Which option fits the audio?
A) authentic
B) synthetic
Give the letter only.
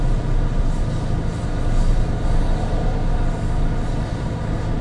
A